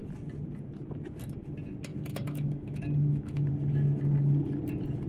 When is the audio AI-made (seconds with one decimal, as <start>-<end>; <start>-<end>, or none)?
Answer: 1.9-3.5